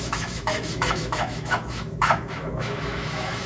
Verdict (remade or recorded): remade